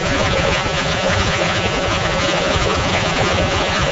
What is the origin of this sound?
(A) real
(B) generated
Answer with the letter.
B